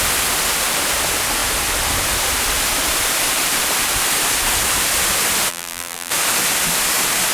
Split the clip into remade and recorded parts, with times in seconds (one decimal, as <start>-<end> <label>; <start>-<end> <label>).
0.0-5.5 recorded; 5.5-6.1 remade; 6.1-7.3 recorded